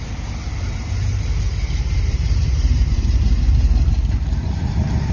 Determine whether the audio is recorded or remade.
remade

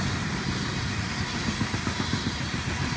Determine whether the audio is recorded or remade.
remade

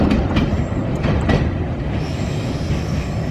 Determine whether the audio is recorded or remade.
recorded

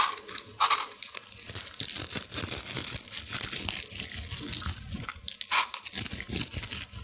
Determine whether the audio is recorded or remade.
recorded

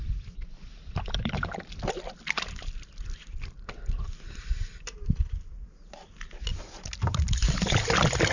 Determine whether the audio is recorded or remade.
recorded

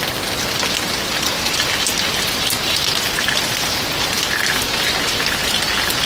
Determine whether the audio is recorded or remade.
recorded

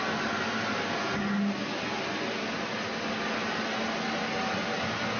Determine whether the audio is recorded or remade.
recorded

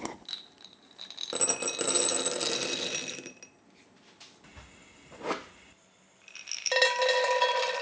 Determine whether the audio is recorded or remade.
recorded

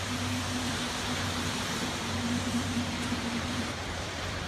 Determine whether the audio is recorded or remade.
remade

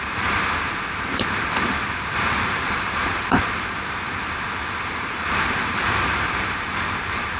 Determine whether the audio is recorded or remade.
remade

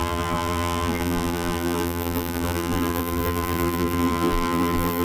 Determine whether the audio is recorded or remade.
remade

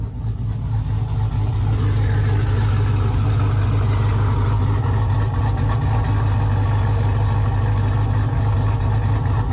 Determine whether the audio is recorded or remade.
recorded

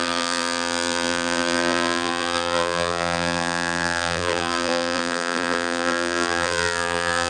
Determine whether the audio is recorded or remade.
remade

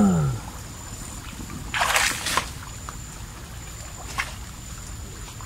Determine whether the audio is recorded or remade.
recorded